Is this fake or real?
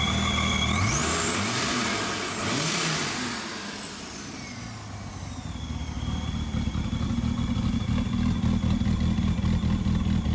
real